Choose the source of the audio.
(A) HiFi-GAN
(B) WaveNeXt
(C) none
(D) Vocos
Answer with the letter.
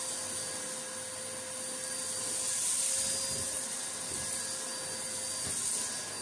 C